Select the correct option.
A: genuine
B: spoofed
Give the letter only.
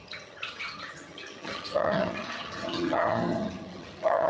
B